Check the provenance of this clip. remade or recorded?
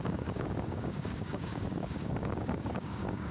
remade